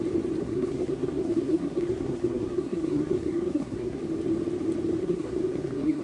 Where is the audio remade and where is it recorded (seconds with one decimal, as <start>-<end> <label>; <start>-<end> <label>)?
0.0-0.4 recorded; 0.4-4.0 remade; 4.0-5.0 recorded; 5.0-6.0 remade